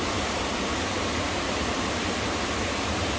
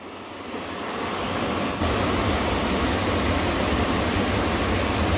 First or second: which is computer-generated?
first